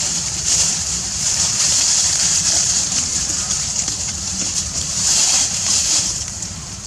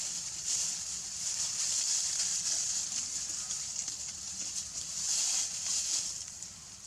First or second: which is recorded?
second